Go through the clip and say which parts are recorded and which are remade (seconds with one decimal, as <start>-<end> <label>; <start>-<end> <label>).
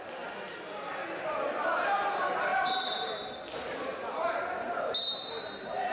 0.0-5.9 recorded